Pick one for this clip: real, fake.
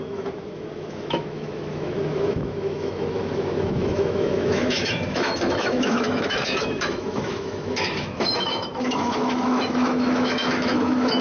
fake